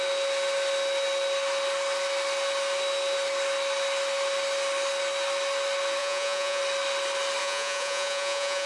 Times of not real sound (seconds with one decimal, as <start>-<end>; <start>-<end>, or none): 6.0-6.6; 7.4-8.7